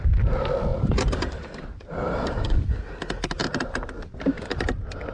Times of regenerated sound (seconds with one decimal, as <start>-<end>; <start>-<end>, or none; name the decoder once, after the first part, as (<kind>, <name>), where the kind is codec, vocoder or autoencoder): 0.7-2.8 (vocoder, BigVGAN v2)